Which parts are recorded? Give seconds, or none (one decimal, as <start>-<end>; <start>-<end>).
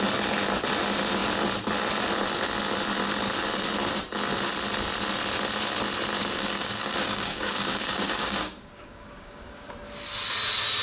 0.0-6.2; 9.7-10.8